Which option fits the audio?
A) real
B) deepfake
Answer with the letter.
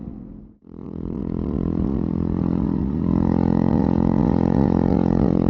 B